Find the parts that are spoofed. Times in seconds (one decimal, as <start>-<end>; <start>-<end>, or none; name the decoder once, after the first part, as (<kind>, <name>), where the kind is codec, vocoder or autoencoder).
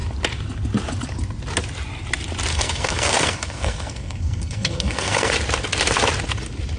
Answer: 2.5-5.3 (codec, SNAC)